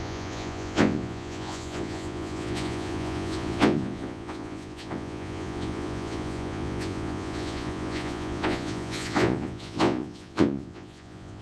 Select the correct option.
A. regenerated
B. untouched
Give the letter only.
A